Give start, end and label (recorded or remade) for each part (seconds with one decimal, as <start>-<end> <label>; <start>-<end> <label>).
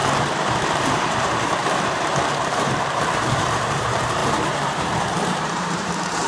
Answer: 0.0-6.3 remade